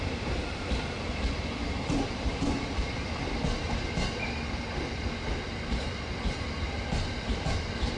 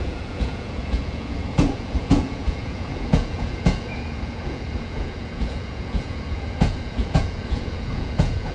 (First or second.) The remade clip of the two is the second